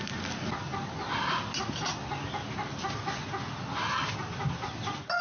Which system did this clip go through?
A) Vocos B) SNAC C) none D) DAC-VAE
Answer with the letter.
C